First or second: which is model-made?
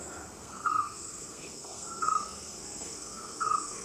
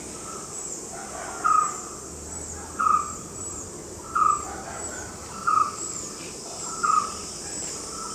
first